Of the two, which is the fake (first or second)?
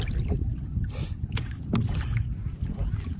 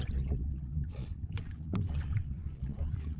second